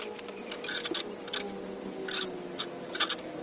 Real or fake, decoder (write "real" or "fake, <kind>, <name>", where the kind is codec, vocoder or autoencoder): real